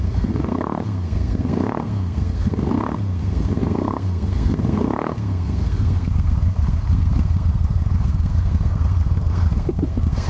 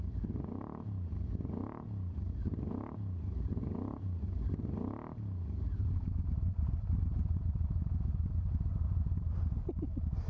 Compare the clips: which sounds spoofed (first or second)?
first